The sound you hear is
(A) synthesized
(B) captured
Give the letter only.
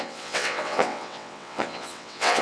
A